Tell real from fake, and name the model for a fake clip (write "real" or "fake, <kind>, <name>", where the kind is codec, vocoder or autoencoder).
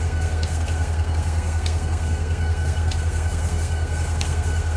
fake, codec, SNAC